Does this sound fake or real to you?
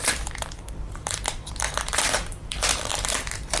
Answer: fake